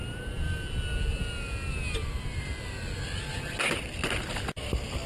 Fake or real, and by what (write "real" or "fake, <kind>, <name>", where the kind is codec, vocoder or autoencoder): real